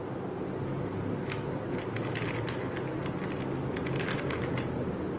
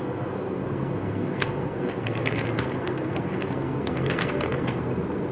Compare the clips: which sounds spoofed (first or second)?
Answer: second